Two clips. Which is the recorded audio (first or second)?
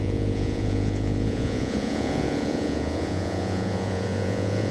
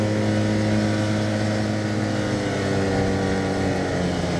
second